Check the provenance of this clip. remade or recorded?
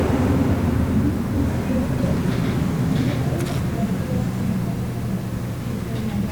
recorded